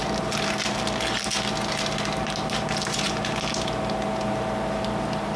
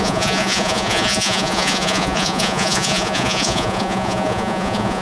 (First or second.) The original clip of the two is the first